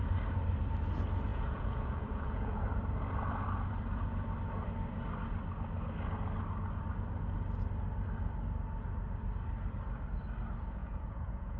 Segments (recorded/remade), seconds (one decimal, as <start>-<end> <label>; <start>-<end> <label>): 0.0-1.3 recorded; 1.3-2.6 remade; 2.6-10.8 recorded; 10.8-11.6 remade